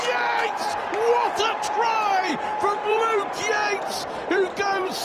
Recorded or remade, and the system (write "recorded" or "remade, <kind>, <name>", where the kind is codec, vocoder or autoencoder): remade, vocoder, BigVGAN v2